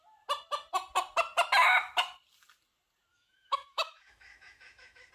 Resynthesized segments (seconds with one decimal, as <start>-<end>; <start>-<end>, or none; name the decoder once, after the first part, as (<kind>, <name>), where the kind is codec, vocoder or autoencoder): 3.1-5.1 (autoencoder, DAC-VAE)